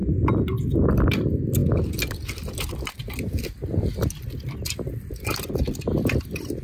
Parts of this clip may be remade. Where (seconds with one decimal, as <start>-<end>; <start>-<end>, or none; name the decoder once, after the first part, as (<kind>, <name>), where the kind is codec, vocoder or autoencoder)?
1.1-1.6 (vocoder, BigVGAN v2); 5.1-6.6